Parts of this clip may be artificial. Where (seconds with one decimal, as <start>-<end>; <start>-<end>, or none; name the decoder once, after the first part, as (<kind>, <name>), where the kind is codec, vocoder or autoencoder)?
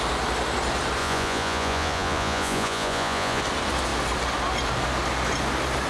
1.0-3.4 (vocoder, Vocos)